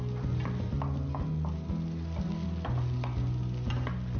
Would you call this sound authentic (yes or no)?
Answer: yes